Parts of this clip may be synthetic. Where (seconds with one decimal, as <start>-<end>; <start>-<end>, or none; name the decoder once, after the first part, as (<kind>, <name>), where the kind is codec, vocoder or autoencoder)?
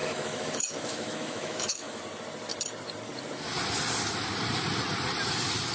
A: 0.0-2.0 (autoencoder, DAC-VAE)